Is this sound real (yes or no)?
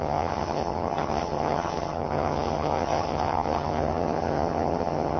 no